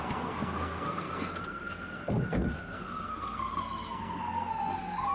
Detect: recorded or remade remade